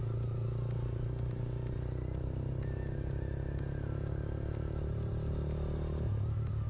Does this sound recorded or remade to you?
recorded